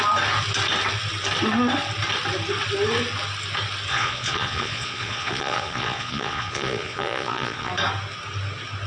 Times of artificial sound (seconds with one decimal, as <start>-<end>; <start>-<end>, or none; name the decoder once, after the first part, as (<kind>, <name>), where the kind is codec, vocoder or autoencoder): 3.9-7.7 (vocoder, Vocos)